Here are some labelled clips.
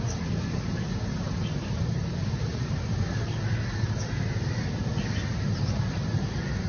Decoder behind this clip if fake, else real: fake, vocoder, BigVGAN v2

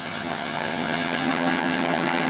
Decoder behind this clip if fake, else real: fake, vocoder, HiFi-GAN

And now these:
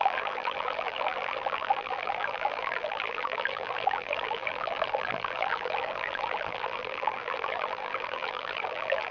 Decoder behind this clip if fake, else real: fake, vocoder, BigVGAN v2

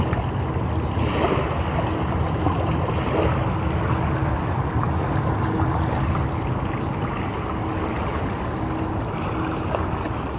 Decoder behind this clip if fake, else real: real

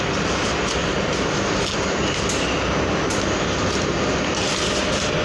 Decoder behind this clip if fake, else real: real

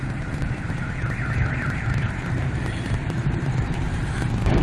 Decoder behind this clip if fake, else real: fake, vocoder, BigVGAN v2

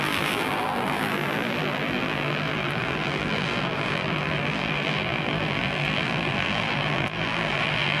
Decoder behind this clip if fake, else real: fake, vocoder, BigVGAN v2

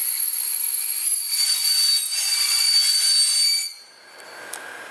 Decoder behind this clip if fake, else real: real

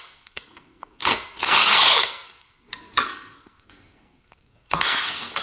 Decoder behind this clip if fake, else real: fake, codec, SNAC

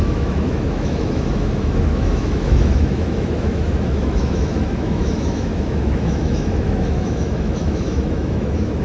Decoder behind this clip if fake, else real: fake, autoencoder, DAC-VAE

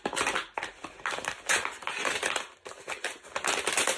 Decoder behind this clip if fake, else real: real